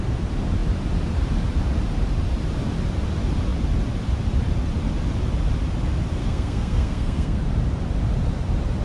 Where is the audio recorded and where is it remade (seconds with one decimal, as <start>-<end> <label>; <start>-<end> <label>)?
0.0-6.2 recorded; 6.2-7.4 remade; 7.4-8.8 recorded